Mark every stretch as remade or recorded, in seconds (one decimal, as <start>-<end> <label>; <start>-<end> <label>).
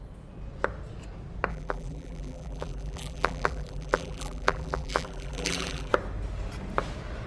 0.0-1.5 recorded; 1.5-5.9 remade; 5.9-7.3 recorded